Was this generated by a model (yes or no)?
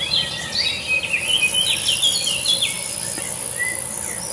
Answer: no